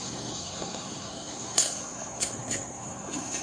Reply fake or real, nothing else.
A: fake